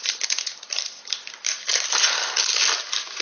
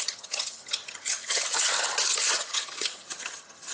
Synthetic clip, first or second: second